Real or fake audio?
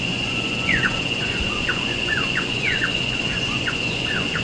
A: fake